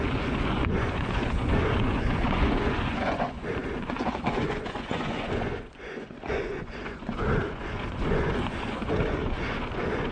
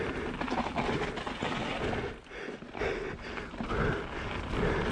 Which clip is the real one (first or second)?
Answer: second